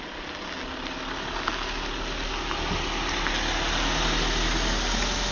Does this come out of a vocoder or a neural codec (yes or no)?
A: no